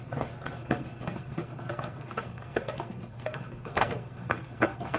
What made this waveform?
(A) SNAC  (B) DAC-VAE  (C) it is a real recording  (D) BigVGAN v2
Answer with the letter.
A